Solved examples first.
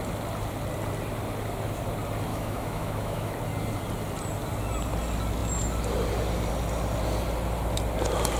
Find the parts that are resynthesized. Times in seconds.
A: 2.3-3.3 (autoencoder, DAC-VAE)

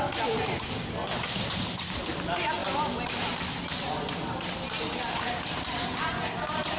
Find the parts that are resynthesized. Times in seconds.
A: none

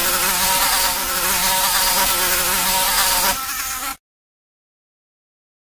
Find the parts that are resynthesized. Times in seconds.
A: none